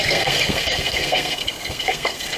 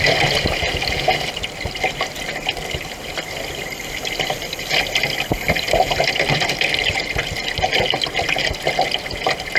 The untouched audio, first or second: second